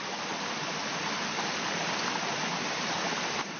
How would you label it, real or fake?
real